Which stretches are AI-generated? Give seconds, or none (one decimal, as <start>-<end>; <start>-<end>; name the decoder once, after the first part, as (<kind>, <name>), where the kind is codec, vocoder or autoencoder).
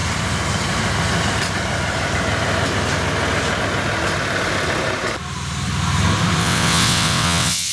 6.4-7.7 (vocoder, WaveNeXt)